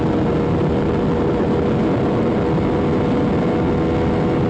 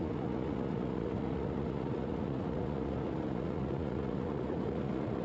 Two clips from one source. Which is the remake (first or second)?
second